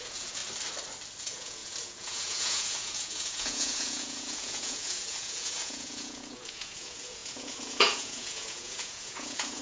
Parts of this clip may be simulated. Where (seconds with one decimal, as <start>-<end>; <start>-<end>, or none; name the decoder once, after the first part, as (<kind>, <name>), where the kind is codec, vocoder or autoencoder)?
0.0-0.4 (vocoder, Vocos); 1.2-9.6